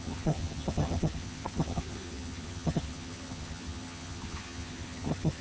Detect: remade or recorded remade